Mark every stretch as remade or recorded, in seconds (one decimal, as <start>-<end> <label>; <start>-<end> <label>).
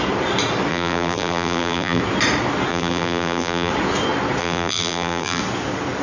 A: 0.0-0.7 recorded; 0.7-2.0 remade; 2.0-2.7 recorded; 2.7-3.7 remade; 3.7-4.4 recorded; 4.4-5.4 remade; 5.4-6.0 recorded